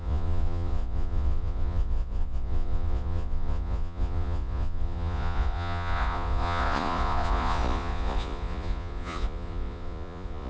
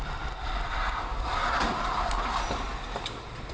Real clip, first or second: second